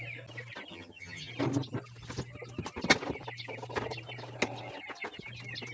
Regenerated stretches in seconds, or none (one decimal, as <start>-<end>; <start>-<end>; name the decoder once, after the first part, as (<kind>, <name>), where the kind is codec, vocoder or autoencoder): 0.7-1.3 (vocoder, HiFi-GAN)